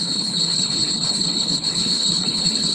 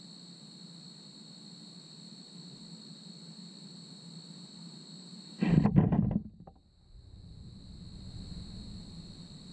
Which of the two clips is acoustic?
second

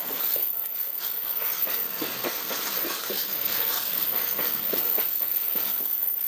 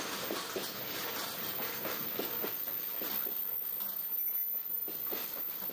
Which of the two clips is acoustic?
second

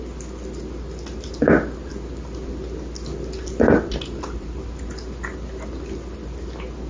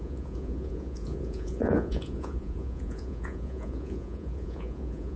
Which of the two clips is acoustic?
first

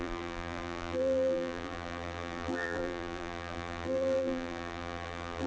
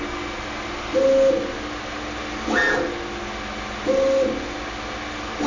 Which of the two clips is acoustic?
second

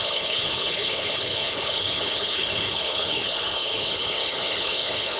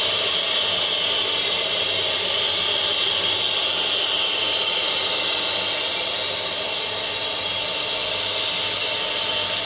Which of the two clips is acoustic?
second